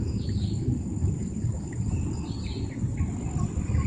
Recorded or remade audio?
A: recorded